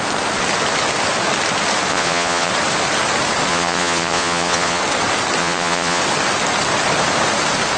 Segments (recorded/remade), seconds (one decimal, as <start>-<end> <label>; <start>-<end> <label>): 0.0-1.9 recorded; 1.9-2.5 remade; 2.5-3.5 recorded; 3.5-4.8 remade; 4.8-5.4 recorded; 5.4-6.0 remade; 6.0-7.8 recorded